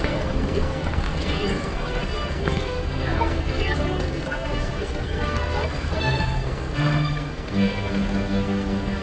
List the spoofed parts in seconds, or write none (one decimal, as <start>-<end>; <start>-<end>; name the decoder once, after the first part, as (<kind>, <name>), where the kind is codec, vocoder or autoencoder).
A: 0.0-9.0 (codec, SNAC)

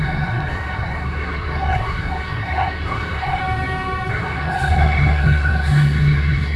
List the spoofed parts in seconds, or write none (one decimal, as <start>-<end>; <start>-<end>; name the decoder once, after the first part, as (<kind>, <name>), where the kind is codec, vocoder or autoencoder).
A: 0.0-3.4 (codec, SNAC); 4.1-6.6

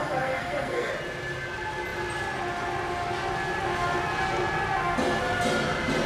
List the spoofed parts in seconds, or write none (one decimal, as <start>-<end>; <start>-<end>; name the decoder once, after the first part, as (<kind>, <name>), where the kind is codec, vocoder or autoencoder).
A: 0.0-0.9 (codec, SNAC)